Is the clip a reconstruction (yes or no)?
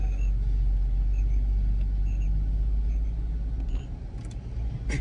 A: no